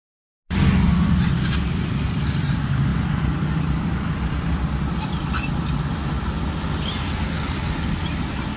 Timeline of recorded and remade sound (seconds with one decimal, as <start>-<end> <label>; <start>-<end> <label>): 0.0-8.6 recorded